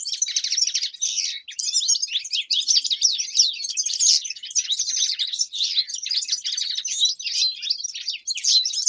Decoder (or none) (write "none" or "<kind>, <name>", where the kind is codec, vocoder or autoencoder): none